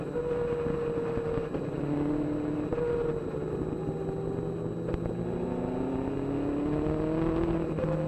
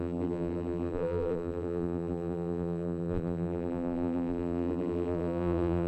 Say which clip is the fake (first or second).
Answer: second